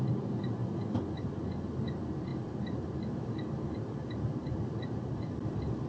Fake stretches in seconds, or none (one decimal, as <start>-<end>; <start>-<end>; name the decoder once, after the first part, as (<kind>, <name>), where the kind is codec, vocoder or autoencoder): 2.3-5.9 (vocoder, BigVGAN v2)